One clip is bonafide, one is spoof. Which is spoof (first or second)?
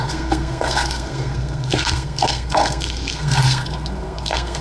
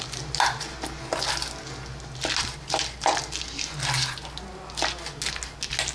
first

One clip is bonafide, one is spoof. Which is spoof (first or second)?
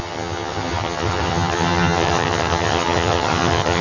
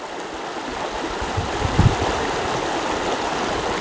first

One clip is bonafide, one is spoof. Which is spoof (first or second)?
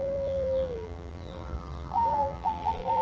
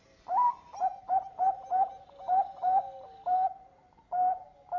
first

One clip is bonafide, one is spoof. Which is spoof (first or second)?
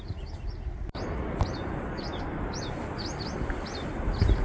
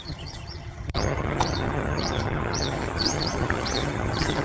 second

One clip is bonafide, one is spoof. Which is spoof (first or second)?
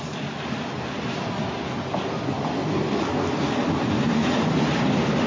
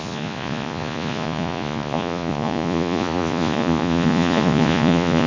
second